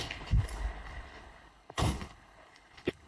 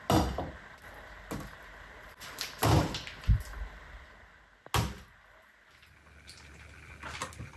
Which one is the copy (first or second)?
first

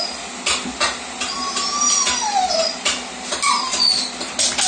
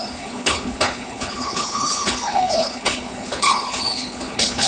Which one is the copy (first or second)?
second